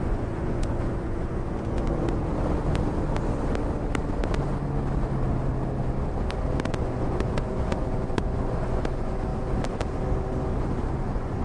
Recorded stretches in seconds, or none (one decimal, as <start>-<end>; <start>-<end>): 1.9-6.8; 9.3-10.9